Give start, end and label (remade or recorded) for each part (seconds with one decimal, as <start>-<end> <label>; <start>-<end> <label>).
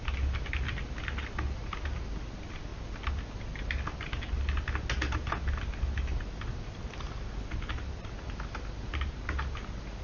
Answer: 0.0-10.0 recorded